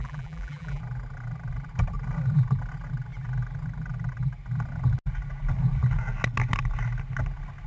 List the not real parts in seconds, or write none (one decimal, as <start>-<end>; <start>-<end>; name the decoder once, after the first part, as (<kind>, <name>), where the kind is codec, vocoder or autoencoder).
0.0-0.8 (vocoder, BigVGAN v2)